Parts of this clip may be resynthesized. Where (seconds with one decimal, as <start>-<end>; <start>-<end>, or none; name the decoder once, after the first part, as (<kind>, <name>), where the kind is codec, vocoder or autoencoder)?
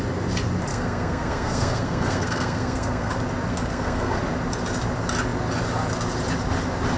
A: 0.7-3.1 (codec, SNAC); 3.5-4.2